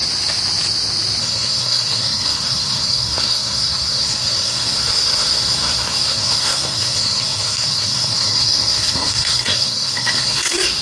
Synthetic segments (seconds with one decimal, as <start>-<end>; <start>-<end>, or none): 1.2-10.8